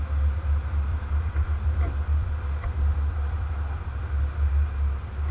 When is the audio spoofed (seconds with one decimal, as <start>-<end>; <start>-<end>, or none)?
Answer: 0.9-4.1